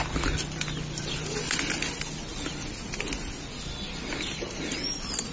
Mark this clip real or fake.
real